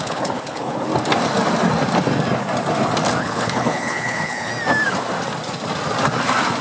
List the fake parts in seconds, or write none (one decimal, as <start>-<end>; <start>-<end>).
0.0-0.9; 3.2-4.5